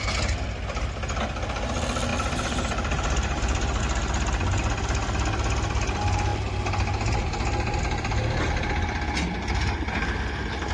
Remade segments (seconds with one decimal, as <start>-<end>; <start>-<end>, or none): 2.1-3.8